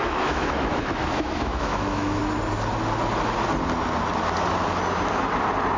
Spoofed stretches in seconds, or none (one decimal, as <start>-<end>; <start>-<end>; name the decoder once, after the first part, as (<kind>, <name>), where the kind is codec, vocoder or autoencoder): 0.0-2.2 (autoencoder, DAC-VAE)